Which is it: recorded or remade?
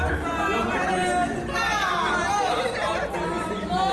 recorded